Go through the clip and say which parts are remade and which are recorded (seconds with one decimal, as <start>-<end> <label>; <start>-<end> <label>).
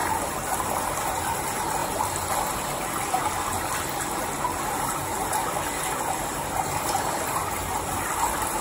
0.0-1.8 remade; 1.8-6.8 recorded; 6.8-8.6 remade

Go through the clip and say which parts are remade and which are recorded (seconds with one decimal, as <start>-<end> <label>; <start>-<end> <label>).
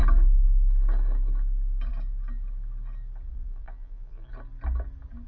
0.0-3.3 recorded; 3.3-4.3 remade; 4.3-5.3 recorded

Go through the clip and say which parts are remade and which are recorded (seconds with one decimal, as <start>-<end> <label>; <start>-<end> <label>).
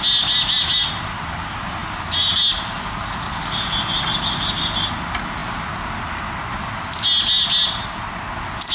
0.0-8.7 recorded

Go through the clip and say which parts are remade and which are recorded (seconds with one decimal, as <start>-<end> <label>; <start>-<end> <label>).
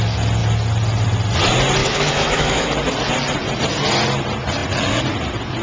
0.0-1.8 recorded; 1.8-2.7 remade; 2.7-5.6 recorded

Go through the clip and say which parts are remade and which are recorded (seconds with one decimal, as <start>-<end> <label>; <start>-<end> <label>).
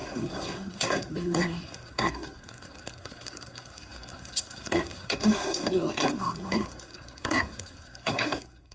0.0-8.7 remade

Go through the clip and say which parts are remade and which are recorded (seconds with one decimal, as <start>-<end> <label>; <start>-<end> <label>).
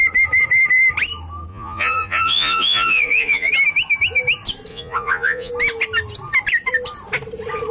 0.0-1.5 recorded; 1.5-3.5 remade; 3.5-4.7 recorded; 4.7-5.5 remade; 5.5-7.7 recorded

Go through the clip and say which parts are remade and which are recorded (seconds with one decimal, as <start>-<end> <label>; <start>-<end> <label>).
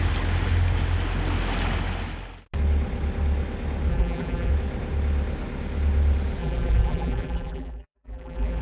0.0-3.9 recorded; 3.9-4.5 remade; 4.5-6.4 recorded; 6.4-8.6 remade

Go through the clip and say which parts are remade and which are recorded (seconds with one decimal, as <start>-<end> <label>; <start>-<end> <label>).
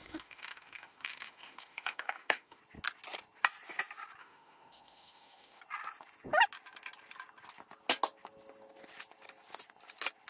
0.0-2.6 remade; 2.6-4.2 recorded; 4.2-5.6 remade; 5.6-10.3 recorded